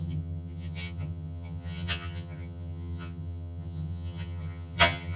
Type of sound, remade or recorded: remade